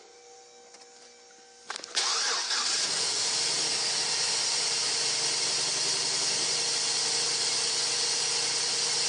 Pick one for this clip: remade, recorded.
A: recorded